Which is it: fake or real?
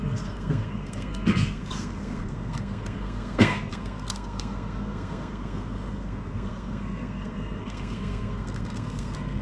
fake